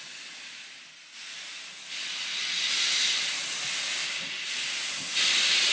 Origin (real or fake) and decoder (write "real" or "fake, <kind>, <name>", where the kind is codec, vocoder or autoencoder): real